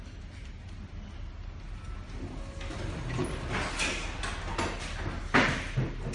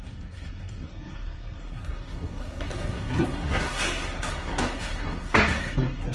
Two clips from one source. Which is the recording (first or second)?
first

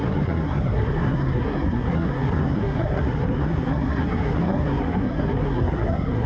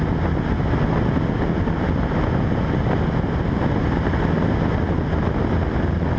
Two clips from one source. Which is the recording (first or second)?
second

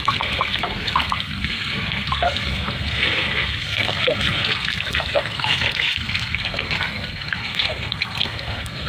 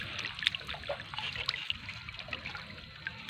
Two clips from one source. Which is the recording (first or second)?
second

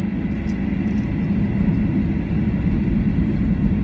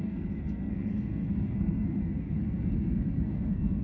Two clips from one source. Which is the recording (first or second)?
first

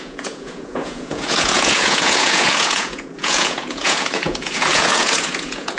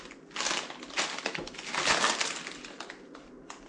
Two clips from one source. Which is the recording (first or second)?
second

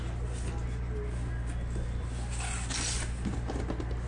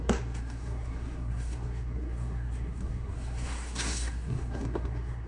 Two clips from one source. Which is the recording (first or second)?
first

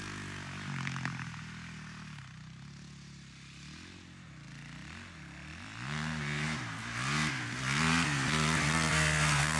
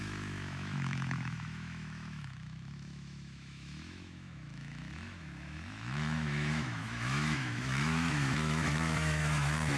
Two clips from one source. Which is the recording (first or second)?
first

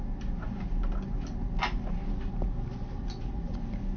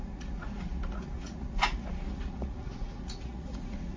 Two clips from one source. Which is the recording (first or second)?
first